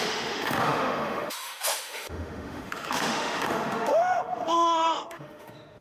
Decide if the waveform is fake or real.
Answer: fake